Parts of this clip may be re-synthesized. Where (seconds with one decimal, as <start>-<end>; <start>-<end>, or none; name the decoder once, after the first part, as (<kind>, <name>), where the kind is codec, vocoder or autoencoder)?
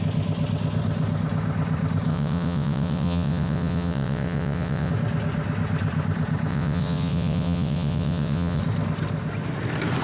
2.1-4.9 (vocoder, WaveNeXt); 6.5-8.6